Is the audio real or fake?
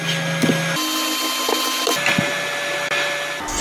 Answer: real